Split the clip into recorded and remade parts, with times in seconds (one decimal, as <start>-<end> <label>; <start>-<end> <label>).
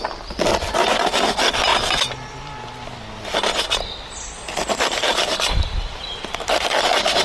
0.0-7.2 recorded